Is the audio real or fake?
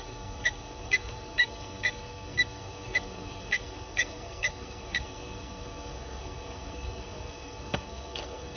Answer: fake